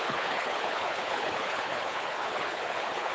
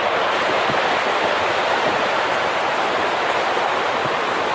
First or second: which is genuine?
second